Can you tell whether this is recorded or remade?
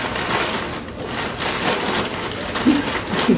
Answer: recorded